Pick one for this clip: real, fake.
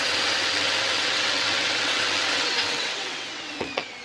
fake